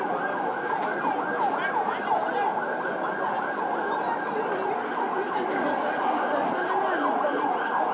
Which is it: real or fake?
real